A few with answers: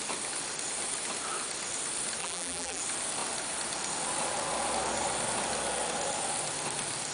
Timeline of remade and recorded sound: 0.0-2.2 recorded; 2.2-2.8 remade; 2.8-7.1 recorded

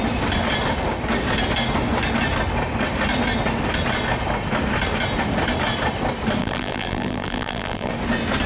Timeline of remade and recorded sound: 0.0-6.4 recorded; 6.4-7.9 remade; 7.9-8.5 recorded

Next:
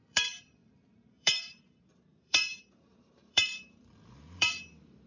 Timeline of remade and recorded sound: 0.0-5.1 remade

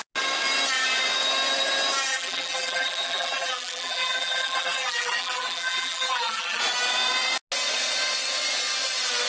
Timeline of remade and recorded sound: 0.0-2.1 recorded; 2.1-6.6 remade; 6.6-9.3 recorded

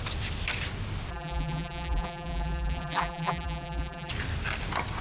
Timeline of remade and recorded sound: 0.0-1.1 recorded; 1.1-4.1 remade; 4.1-5.0 recorded